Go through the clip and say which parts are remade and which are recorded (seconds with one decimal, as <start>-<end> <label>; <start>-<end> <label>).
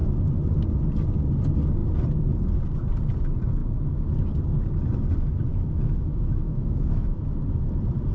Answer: 0.0-5.5 recorded; 5.5-7.2 remade; 7.2-8.1 recorded